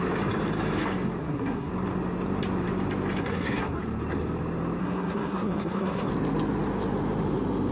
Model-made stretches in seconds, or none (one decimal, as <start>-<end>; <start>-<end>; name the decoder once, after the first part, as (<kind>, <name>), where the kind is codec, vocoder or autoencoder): 1.2-1.7 (codec, SNAC); 3.2-3.8; 4.8-6.1